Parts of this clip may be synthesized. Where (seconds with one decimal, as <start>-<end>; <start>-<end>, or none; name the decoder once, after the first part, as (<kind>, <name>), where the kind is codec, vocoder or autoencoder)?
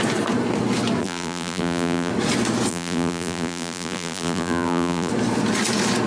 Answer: 1.0-2.1 (vocoder, BigVGAN v2); 2.7-5.1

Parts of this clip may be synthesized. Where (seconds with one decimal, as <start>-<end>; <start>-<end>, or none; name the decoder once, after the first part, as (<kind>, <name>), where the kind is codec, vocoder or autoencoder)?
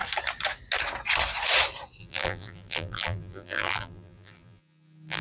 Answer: 2.0-5.2 (vocoder, BigVGAN v2)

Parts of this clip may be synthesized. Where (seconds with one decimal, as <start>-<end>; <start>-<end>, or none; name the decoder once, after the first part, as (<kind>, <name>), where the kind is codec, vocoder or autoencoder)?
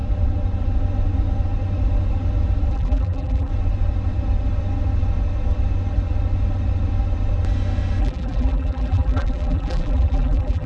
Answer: 2.7-3.5 (vocoder, BigVGAN v2); 8.0-10.7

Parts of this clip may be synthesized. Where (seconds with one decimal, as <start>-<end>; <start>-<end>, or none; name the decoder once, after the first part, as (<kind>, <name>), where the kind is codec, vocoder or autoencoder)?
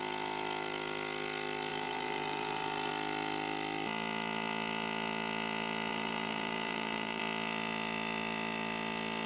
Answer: 1.7-2.9 (vocoder, BigVGAN v2); 5.9-7.2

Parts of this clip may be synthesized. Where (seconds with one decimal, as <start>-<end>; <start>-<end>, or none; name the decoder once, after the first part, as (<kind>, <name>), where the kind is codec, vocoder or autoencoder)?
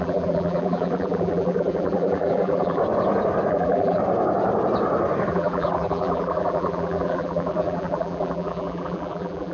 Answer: 0.0-2.8 (vocoder, BigVGAN v2); 3.5-4.0; 5.3-9.5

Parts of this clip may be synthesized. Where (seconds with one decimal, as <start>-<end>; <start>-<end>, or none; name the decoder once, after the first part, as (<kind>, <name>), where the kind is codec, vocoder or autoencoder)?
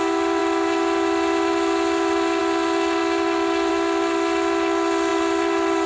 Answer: 5.1-5.9 (vocoder, BigVGAN v2)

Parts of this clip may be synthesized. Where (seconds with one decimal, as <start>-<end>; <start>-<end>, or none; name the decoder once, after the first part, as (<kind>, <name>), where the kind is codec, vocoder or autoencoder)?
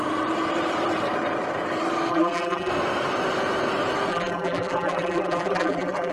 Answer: 2.1-2.7 (vocoder, BigVGAN v2); 4.1-6.1